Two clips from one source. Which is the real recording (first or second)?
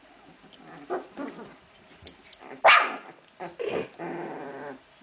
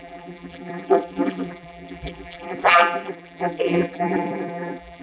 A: first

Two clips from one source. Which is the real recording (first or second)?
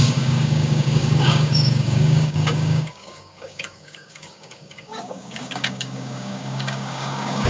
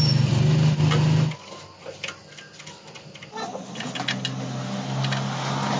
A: second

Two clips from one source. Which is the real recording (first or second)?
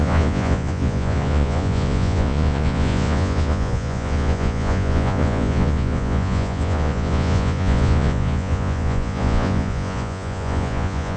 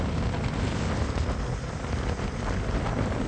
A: second